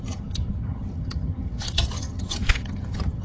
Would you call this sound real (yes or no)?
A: no